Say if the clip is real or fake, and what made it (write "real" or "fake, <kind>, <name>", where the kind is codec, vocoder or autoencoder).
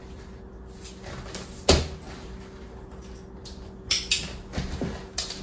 real